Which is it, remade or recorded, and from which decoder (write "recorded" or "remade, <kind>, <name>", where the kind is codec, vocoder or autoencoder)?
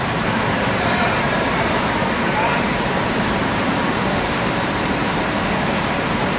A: remade, vocoder, BigVGAN v2